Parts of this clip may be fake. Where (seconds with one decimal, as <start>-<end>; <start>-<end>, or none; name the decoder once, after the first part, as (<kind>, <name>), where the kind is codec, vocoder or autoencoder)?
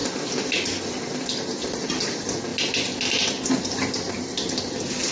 none